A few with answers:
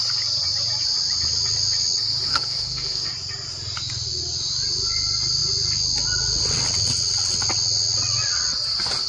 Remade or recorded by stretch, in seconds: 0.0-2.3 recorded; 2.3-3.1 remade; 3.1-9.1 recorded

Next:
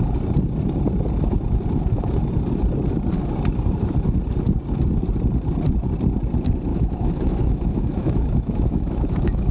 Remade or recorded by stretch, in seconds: 0.0-6.7 recorded; 6.7-9.5 remade

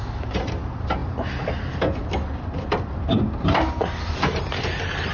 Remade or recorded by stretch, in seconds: 0.0-5.1 recorded

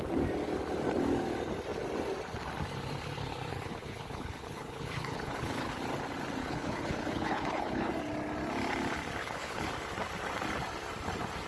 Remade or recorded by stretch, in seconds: 0.0-3.5 recorded; 3.5-5.8 remade; 5.8-6.4 recorded; 6.4-7.9 remade; 7.9-9.2 recorded; 9.2-9.7 remade; 9.7-11.5 recorded